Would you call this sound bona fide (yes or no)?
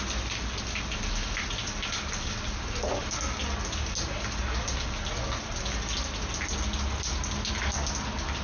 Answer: yes